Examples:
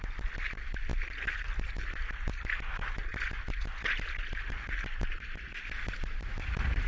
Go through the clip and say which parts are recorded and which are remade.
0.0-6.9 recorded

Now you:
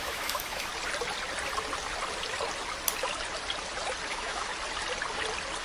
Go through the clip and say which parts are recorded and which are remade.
0.0-0.7 remade; 0.7-4.1 recorded; 4.1-4.5 remade; 4.5-5.6 recorded